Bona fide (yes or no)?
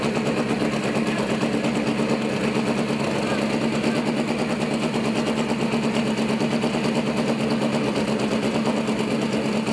yes